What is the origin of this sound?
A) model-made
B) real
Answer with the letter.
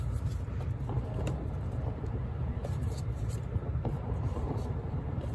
A